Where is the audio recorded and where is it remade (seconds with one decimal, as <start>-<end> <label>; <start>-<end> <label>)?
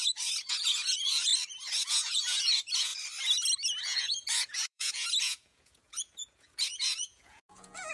0.0-1.3 remade; 1.3-1.9 recorded; 1.9-2.9 remade; 2.9-3.8 recorded; 3.8-7.9 remade